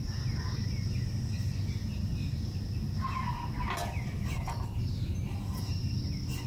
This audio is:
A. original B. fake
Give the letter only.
A